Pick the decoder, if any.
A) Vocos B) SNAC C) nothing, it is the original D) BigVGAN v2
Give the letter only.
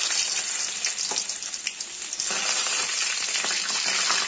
C